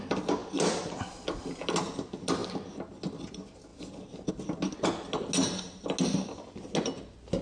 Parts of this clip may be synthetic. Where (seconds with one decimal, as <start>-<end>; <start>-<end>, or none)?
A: none